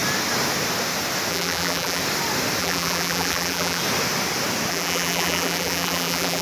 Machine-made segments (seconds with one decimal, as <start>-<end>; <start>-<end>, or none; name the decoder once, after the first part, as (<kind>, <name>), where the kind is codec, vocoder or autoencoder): 1.3-2.0 (vocoder, BigVGAN v2); 2.6-3.8; 4.7-6.4